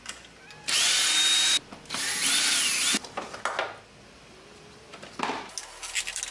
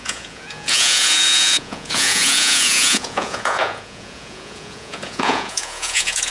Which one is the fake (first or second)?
second